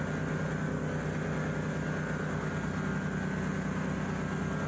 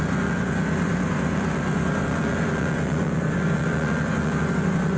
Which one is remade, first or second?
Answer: second